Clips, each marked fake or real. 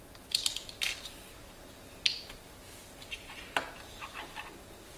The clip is real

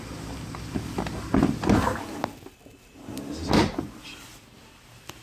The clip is real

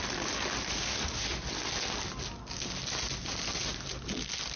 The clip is real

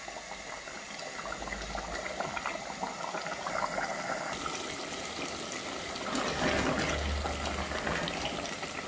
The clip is real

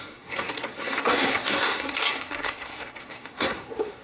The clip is fake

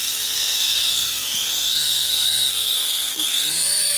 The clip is fake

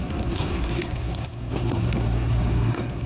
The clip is fake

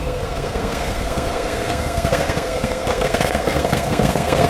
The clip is fake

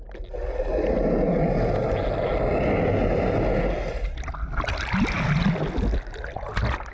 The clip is real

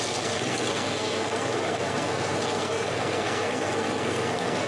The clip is fake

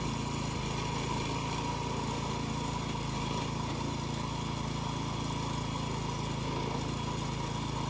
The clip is real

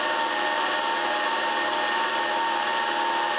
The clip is real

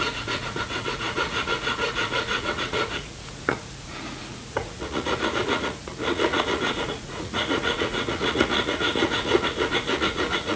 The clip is fake